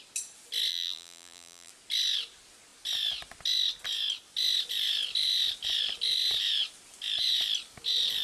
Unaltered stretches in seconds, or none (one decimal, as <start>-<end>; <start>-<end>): 0.0-0.7; 1.7-8.2